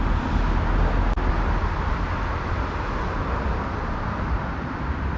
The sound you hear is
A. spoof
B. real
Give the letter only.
B